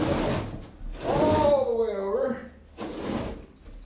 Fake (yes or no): no